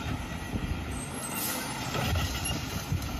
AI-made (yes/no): no